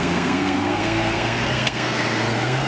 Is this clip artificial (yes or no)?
yes